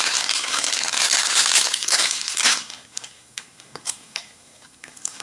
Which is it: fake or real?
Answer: fake